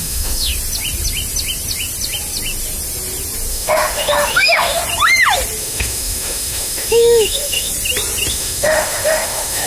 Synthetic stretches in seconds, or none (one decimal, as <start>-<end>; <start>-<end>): 0.0-0.5; 3.5-4.8; 5.6-7.7; 8.3-9.7